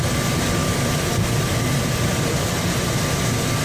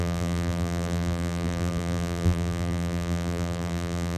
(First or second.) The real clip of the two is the first